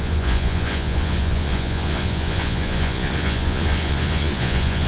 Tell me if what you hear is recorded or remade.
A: remade